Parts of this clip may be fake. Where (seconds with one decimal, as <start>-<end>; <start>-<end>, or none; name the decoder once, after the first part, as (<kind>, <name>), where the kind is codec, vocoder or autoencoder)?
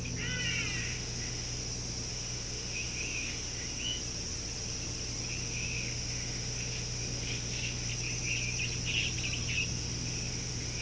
0.8-1.6 (autoencoder, DAC-VAE); 2.1-4.0; 5.4-7.9; 9.7-10.8